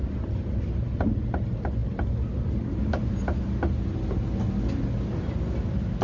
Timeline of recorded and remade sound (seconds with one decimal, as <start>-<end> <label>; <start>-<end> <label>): 0.0-6.0 recorded